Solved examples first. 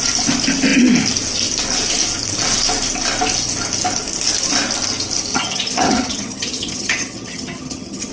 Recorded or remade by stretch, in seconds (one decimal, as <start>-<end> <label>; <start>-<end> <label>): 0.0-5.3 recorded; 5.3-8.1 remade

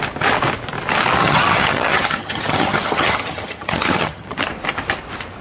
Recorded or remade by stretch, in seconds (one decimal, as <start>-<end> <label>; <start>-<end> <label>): 0.0-1.2 recorded; 1.2-4.4 remade; 4.4-5.4 recorded

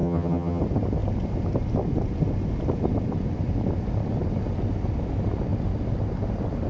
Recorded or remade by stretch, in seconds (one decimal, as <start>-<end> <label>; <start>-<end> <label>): 0.0-0.6 remade; 0.6-6.7 recorded